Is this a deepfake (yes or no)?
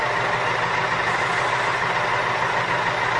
no